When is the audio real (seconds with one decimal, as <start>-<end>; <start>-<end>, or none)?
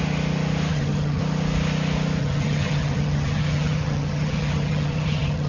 0.0-0.7; 1.2-2.2